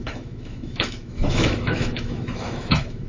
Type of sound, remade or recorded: remade